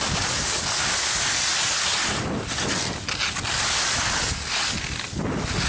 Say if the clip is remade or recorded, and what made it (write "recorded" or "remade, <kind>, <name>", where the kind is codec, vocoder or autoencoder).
recorded